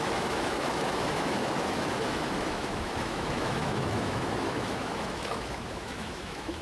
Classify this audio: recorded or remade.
remade